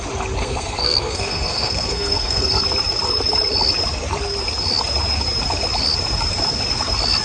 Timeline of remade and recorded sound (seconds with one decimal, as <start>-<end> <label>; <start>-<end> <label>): 0.0-0.4 recorded; 0.4-2.6 remade; 2.6-7.2 recorded